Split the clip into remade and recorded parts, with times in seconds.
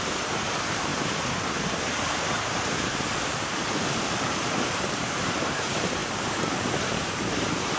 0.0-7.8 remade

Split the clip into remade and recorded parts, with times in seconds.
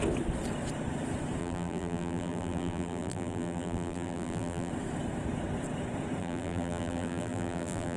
0.0-1.4 recorded; 1.4-4.7 remade; 4.7-6.2 recorded; 6.2-8.0 remade